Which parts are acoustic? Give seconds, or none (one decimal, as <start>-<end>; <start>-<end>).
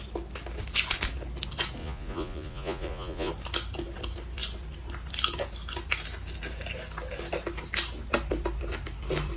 0.0-1.8; 3.3-9.4